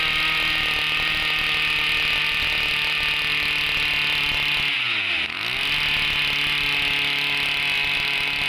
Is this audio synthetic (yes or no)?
no